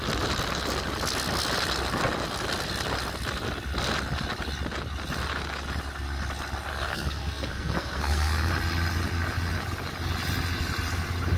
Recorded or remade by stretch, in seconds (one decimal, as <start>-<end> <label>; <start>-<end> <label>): 0.0-6.7 recorded; 6.7-8.5 remade; 8.5-11.4 recorded